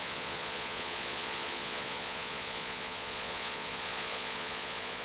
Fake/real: fake